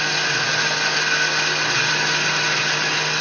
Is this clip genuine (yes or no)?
yes